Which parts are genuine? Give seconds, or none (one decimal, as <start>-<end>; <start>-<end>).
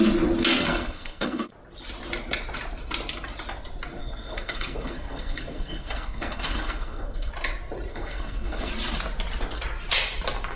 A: 0.0-0.5; 1.5-4.0; 7.3-7.9; 8.7-10.6